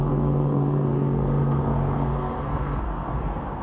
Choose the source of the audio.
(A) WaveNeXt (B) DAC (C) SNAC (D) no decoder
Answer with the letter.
C